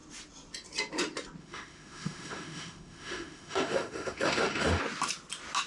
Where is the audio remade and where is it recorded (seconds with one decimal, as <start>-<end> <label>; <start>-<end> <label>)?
0.0-1.4 recorded; 1.4-4.8 remade; 4.8-5.7 recorded